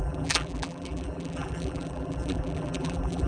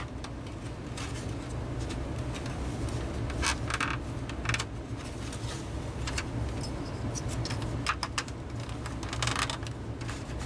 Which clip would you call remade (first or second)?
first